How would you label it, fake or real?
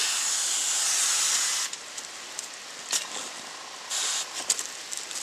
real